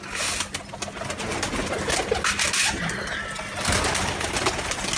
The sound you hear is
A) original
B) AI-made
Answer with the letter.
A